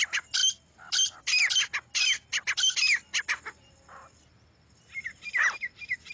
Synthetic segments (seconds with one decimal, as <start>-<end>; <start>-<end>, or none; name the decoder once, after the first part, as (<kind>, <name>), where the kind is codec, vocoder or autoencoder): 0.4-1.6 (vocoder, BigVGAN v2); 2.3-6.1